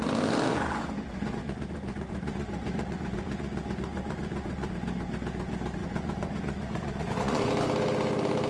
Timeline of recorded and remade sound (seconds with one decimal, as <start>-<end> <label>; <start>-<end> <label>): 0.0-0.5 recorded; 0.5-4.7 remade; 4.7-5.8 recorded; 5.8-7.5 remade; 7.5-8.5 recorded